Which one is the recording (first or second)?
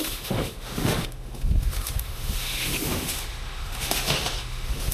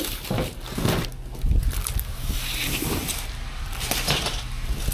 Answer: second